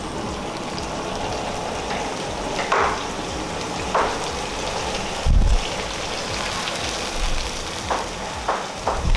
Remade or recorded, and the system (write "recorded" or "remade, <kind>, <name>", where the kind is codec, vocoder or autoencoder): recorded